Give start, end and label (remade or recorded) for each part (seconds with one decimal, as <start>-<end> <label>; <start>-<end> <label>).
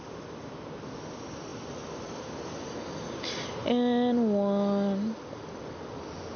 0.0-6.4 recorded